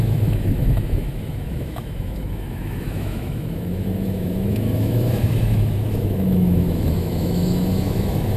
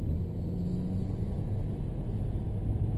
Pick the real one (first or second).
second